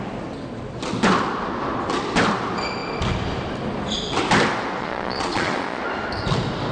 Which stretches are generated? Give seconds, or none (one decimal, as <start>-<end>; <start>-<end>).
4.8-5.8